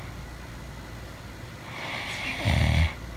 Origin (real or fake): real